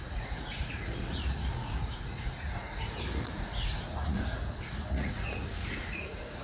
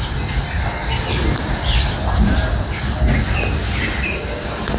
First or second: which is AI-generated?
first